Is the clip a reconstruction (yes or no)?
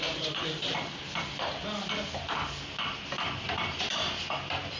no